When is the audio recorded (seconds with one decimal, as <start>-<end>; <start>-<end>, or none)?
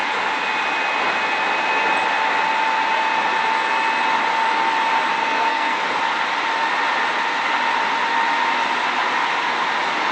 0.0-5.2; 5.8-10.1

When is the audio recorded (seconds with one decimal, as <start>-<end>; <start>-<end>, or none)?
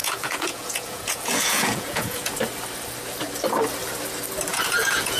2.3-4.5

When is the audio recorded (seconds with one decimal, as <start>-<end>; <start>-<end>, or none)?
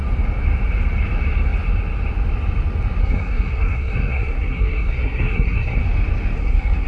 0.0-3.0; 5.8-6.4